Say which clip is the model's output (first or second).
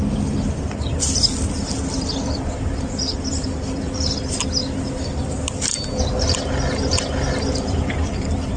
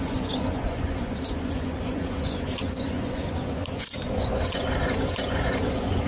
second